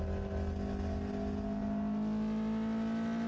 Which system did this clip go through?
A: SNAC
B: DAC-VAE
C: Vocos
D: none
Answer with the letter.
D